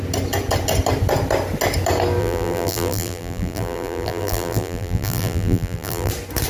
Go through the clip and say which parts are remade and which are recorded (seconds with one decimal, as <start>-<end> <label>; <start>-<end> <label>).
0.0-2.2 recorded; 2.2-6.1 remade; 6.1-6.5 recorded